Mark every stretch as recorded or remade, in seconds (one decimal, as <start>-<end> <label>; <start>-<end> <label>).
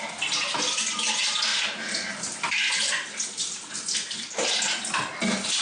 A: 0.0-5.6 recorded